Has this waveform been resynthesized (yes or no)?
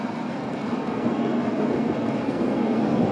yes